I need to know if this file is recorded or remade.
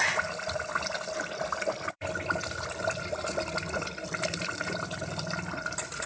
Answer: remade